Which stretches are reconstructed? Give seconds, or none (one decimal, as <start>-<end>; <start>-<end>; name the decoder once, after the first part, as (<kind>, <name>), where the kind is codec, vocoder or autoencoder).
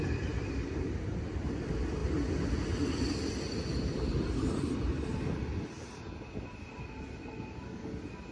none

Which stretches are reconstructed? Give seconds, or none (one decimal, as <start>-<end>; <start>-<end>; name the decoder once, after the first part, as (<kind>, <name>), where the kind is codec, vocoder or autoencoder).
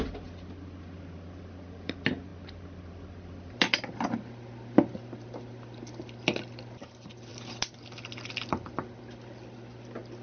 0.0-10.2 (vocoder, BigVGAN v2)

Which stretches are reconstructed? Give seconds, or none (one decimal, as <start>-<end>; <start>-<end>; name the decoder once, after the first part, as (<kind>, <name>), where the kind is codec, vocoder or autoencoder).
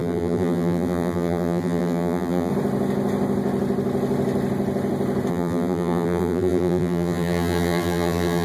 0.0-2.5 (vocoder, BigVGAN v2); 5.3-8.4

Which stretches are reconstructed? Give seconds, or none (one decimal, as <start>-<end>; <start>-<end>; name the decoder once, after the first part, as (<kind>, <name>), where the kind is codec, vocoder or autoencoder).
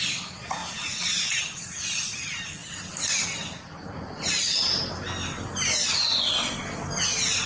0.6-1.3 (vocoder, BigVGAN v2)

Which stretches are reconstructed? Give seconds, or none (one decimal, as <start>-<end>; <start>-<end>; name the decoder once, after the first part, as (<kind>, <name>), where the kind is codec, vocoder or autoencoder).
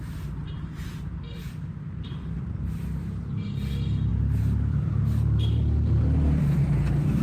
4.1-5.9 (vocoder, BigVGAN v2)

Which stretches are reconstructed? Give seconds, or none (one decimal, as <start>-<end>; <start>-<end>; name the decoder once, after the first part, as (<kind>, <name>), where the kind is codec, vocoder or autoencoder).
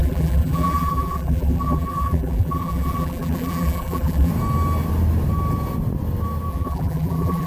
0.0-4.3 (vocoder, BigVGAN v2); 6.5-7.5